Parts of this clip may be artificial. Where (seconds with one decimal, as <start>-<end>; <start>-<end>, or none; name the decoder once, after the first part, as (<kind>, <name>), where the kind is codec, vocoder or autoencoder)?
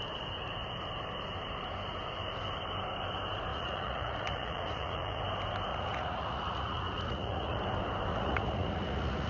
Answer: 3.5-5.2 (vocoder, Vocos); 5.7-7.6; 8.1-9.3